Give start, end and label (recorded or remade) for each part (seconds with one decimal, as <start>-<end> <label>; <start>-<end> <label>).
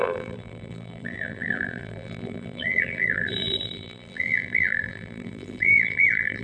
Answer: 0.0-6.4 remade